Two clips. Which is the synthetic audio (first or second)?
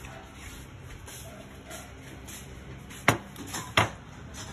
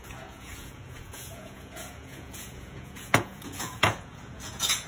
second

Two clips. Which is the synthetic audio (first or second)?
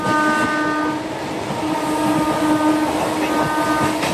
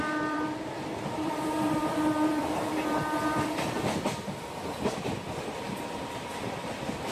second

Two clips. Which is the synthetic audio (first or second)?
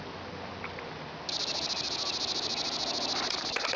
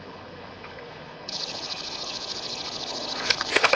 second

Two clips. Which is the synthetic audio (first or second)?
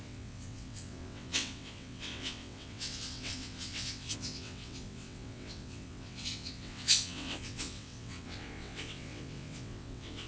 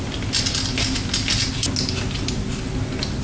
first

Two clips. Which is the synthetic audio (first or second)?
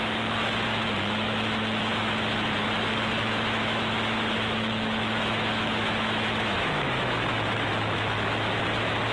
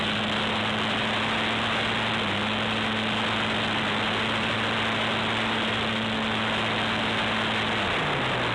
first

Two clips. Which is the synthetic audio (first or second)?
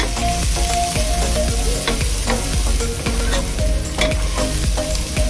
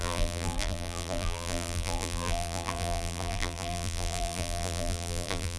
second